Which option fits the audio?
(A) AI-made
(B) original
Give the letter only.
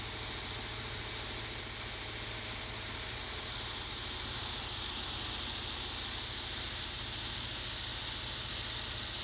B